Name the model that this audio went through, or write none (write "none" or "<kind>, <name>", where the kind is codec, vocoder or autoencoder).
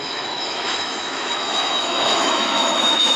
autoencoder, DAC-VAE